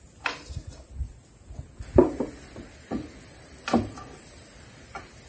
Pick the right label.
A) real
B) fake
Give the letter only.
A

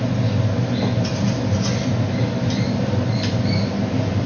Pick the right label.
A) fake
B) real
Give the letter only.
B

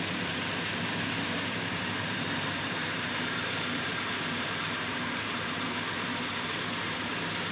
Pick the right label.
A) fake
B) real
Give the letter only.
A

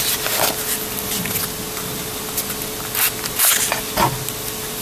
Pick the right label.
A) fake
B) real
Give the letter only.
B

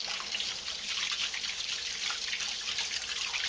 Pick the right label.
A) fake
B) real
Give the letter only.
B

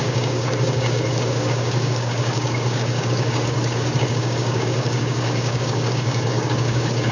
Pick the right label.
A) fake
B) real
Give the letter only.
A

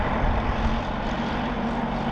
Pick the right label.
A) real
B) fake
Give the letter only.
A